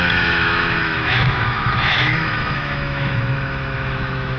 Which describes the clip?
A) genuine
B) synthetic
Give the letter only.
B